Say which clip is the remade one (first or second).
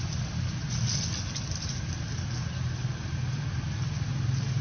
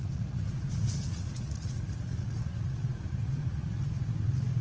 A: second